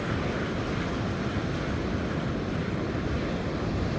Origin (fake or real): real